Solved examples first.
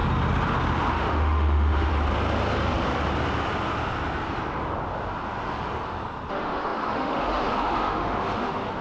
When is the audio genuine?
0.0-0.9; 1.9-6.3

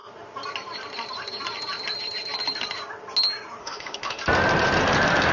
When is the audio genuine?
0.0-3.6; 4.2-5.3

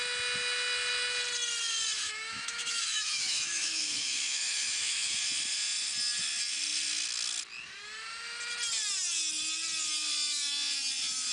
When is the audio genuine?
0.0-2.0; 5.2-11.3

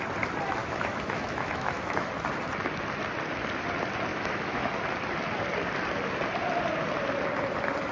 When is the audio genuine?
0.0-0.6; 2.1-4.1; 4.7-7.9

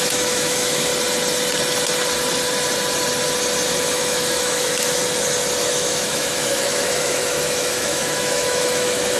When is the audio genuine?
0.9-3.8; 5.0-5.6